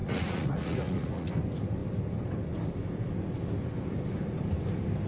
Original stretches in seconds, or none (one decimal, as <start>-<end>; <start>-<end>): 1.3-5.1